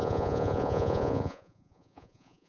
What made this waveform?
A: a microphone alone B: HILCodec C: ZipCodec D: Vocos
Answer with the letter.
D